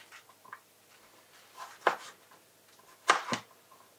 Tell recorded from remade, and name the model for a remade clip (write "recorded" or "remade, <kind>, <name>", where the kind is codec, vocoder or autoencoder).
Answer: recorded